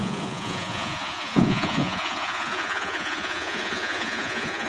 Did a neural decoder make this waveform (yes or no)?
yes